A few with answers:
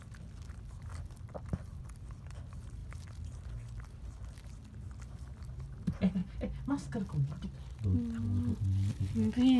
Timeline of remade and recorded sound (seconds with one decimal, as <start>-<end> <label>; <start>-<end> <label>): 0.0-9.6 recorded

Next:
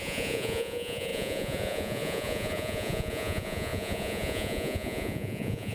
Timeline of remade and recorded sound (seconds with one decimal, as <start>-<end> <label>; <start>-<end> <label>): 0.0-5.7 remade

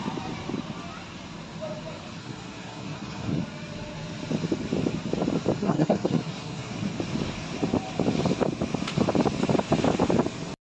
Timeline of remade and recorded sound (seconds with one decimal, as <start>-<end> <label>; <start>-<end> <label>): 0.0-2.2 recorded; 2.2-3.4 remade; 3.4-5.6 recorded; 5.6-6.7 remade; 6.7-10.7 recorded

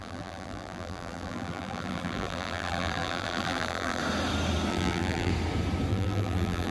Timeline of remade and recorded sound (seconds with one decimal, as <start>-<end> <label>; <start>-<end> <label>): 0.0-4.0 remade; 4.0-4.7 recorded; 4.7-5.3 remade; 5.3-5.9 recorded; 5.9-6.7 remade

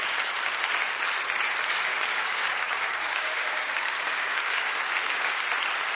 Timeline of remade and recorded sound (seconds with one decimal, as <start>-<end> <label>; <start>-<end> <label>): 0.0-1.9 recorded; 1.9-5.4 remade; 5.4-5.9 recorded